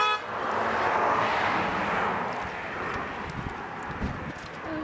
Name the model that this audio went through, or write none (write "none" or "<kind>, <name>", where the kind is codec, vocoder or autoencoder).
none